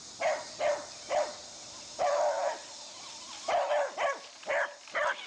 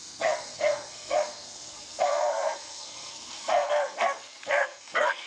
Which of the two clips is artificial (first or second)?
second